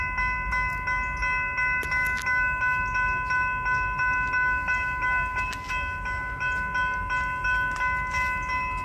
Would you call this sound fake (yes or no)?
no